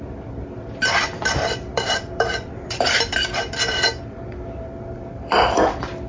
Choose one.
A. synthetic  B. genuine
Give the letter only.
A